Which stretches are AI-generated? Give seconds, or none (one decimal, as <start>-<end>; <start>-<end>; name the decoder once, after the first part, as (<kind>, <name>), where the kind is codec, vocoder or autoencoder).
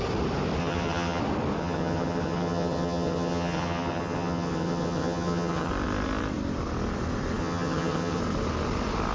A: 0.6-1.2 (vocoder, HiFi-GAN); 1.6-5.7; 7.4-8.2